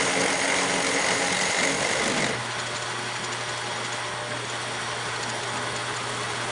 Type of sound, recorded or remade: recorded